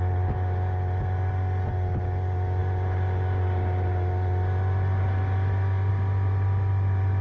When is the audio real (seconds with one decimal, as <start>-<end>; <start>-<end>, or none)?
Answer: 0.0-7.2